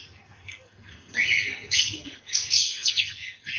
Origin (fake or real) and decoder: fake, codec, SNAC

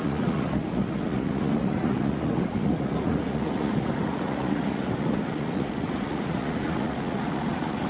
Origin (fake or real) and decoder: fake, vocoder, Vocos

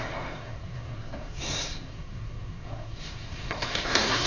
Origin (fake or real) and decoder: fake, codec, SNAC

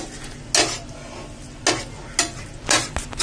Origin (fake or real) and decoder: real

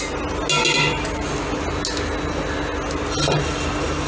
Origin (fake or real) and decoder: real